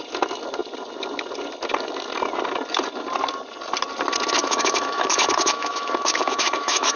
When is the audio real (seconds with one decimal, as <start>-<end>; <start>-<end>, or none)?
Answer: 0.0-4.4